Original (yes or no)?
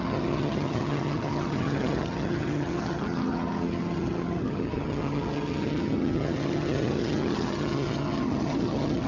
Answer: no